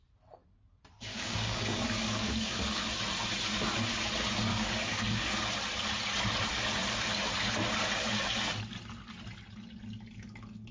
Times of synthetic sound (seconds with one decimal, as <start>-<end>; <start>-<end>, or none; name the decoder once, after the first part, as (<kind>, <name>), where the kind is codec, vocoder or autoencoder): 1.1-2.9 (codec, DAC); 4.5-5.2